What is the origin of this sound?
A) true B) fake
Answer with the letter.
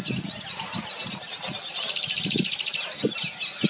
A